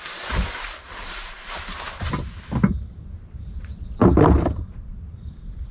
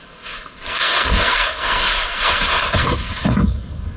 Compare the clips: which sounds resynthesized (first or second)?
second